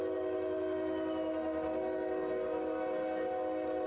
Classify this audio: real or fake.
real